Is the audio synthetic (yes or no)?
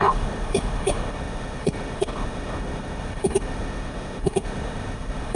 yes